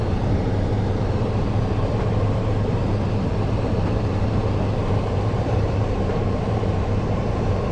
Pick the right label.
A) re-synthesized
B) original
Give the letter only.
A